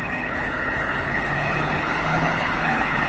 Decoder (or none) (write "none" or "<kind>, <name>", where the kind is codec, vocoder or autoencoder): codec, HILCodec